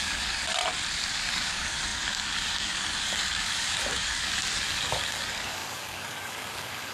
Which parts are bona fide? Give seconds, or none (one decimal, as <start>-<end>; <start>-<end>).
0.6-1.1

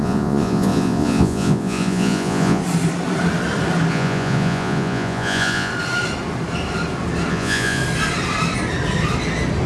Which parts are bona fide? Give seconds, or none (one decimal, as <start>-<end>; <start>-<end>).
2.6-3.9; 5.7-7.3; 7.8-9.7

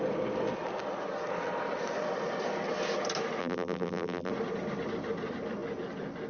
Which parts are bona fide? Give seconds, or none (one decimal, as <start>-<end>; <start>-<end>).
0.0-3.4; 4.3-6.3

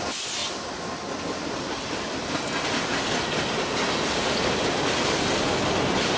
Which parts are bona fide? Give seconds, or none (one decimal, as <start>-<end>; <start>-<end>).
0.4-2.6

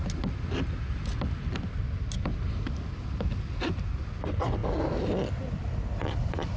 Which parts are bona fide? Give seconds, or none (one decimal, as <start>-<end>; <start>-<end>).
0.0-6.6

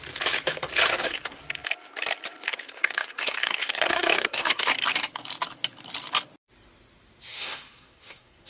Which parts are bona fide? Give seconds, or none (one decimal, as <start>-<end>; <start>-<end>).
0.0-0.9; 1.4-2.5; 4.7-7.3